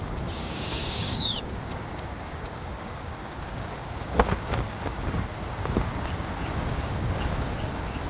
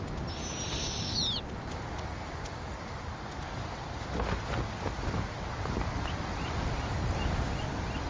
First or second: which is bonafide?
second